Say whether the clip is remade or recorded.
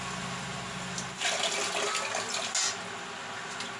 recorded